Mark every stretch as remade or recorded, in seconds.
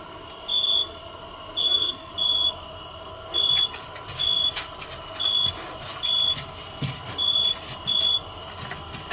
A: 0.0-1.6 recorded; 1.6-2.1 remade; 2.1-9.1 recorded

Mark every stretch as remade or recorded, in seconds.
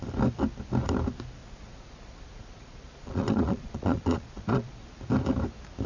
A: 0.0-1.4 recorded; 1.4-4.9 remade; 4.9-5.9 recorded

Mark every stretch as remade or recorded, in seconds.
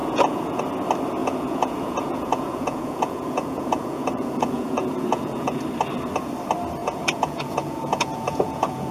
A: 0.0-0.6 remade; 0.6-1.2 recorded; 1.2-5.6 remade; 5.6-6.8 recorded; 6.8-8.9 remade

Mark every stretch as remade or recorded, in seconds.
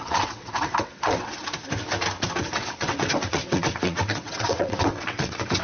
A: 0.0-1.4 remade; 1.4-2.4 recorded; 2.4-5.6 remade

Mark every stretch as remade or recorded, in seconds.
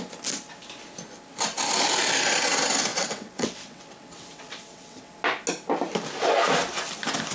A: 0.0-2.9 recorded; 2.9-5.1 remade; 5.1-7.3 recorded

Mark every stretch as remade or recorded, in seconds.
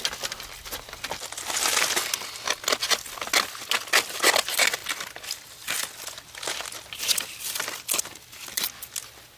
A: 0.0-9.4 recorded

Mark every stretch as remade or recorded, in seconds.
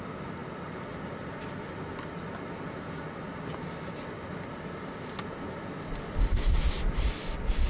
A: 0.0-7.7 recorded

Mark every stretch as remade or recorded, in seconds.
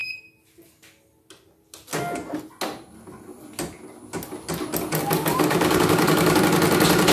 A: 0.0-5.0 recorded; 5.0-6.4 remade; 6.4-7.1 recorded